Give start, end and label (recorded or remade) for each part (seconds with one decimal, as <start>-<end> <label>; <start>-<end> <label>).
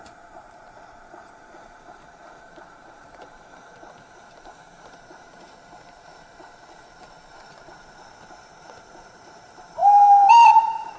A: 0.0-9.8 remade; 9.8-10.3 recorded; 10.3-11.0 remade